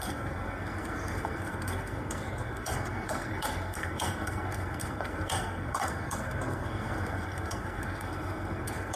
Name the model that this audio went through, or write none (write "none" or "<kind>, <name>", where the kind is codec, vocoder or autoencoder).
codec, SNAC